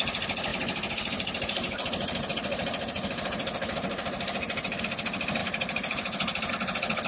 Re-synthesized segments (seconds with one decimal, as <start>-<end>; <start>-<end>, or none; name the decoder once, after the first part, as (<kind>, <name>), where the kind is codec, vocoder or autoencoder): 0.5-4.8 (vocoder, BigVGAN v2); 5.4-6.5